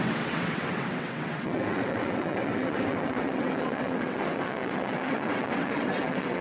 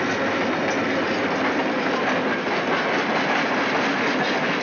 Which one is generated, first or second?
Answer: first